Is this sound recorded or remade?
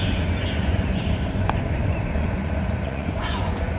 remade